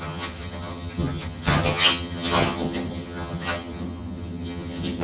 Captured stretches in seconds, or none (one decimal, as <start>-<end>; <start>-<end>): none